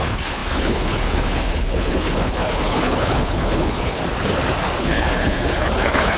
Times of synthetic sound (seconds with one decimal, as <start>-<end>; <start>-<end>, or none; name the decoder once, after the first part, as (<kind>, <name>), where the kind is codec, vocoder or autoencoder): 0.0-4.0 (codec, HILCodec); 4.8-6.2